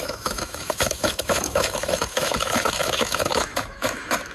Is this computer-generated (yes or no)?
yes